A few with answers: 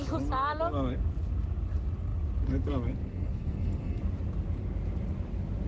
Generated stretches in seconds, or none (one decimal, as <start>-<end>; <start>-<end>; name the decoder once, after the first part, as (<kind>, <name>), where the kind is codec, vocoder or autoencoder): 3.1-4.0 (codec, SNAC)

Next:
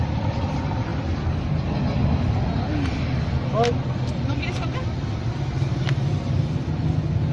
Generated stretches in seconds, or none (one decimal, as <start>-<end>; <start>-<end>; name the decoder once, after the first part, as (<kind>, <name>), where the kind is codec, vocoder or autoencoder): none

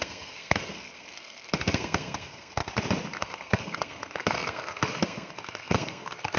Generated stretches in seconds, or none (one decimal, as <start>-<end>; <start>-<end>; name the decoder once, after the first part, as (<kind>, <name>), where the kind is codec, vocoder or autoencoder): 0.0-2.6 (codec, SNAC); 3.2-6.4

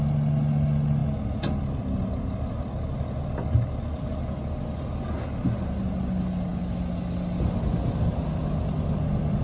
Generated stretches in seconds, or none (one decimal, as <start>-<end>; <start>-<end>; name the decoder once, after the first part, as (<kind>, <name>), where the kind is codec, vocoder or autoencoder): none

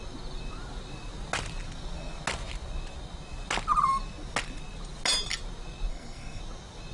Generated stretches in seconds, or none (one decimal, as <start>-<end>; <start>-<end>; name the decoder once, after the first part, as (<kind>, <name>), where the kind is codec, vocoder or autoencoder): 5.9-6.4 (codec, SNAC)

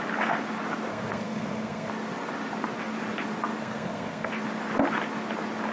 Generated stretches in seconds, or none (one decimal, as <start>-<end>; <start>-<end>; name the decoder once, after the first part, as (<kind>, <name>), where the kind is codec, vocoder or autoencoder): 0.9-1.9 (codec, SNAC); 3.6-4.3

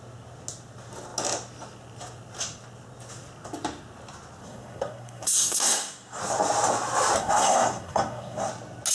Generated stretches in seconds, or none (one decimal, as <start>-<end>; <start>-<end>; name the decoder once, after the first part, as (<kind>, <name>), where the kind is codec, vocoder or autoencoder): 4.4-6.2 (codec, SNAC); 7.2-8.5